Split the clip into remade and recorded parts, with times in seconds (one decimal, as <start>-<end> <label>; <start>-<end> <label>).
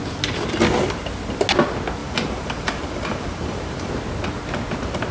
0.0-2.0 recorded; 2.0-3.9 remade; 3.9-5.1 recorded